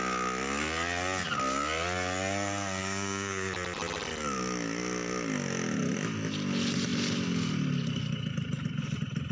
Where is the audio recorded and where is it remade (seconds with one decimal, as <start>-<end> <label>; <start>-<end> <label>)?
0.0-2.8 recorded; 2.8-3.5 remade; 3.5-9.3 recorded

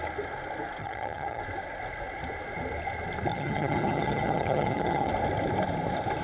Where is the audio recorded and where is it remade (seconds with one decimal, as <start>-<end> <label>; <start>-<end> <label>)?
0.0-0.8 recorded; 0.8-1.4 remade; 1.4-3.3 recorded; 3.3-5.1 remade; 5.1-6.2 recorded